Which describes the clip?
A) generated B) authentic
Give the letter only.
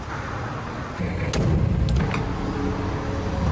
B